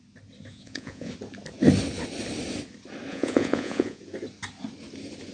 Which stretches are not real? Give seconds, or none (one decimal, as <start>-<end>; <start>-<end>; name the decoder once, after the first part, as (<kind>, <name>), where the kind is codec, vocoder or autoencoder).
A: 0.5-1.1 (vocoder, Vocos); 3.1-4.0